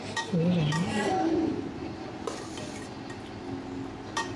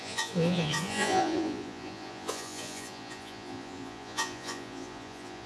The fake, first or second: second